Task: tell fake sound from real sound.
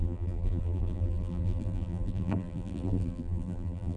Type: fake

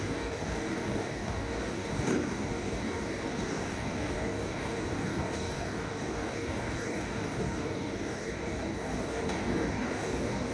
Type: fake